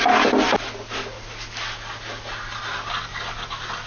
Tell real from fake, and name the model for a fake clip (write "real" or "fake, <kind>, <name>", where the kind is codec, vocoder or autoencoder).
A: real